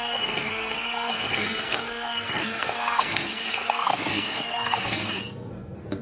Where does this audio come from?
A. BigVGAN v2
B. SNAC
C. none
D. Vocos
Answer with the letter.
B